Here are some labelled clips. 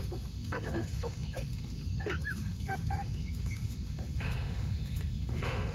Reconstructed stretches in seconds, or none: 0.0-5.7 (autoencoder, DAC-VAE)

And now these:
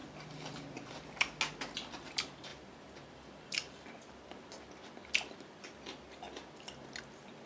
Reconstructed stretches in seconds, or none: none

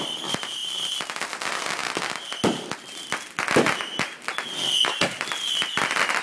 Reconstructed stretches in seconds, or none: none

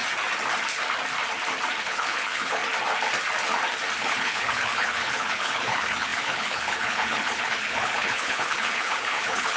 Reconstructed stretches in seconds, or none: 1.8-2.6 (codec, HILCodec); 4.0-9.6

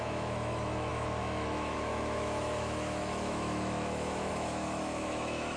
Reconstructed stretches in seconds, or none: 0.0-5.6 (autoencoder, DAC-VAE)